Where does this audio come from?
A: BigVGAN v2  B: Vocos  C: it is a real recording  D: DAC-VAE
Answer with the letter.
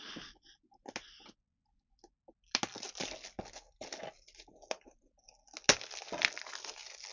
C